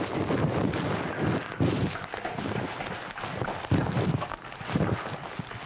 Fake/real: real